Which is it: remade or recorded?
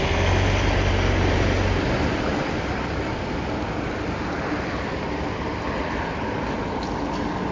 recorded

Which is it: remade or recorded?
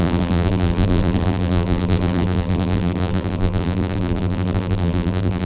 remade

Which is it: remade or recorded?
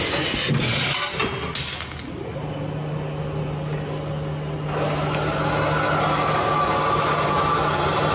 recorded